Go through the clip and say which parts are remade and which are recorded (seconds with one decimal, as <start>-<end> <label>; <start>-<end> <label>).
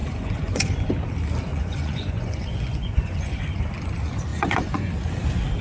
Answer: 0.0-0.9 remade; 0.9-1.5 recorded; 1.5-3.4 remade; 3.4-4.3 recorded; 4.3-4.9 remade; 4.9-5.6 recorded